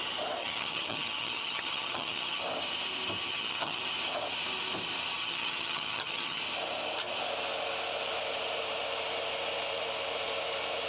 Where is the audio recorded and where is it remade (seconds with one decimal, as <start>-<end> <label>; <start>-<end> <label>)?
0.0-0.4 recorded; 0.4-2.4 remade; 2.4-3.3 recorded; 3.3-3.8 remade; 3.8-5.2 recorded; 5.2-6.4 remade; 6.4-10.9 recorded